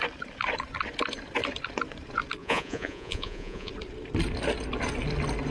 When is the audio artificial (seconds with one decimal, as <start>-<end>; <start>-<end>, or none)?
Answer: 2.4-3.7